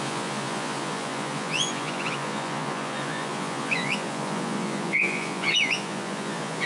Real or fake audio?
fake